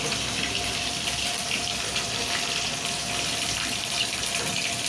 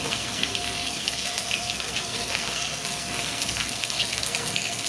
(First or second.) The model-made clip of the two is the second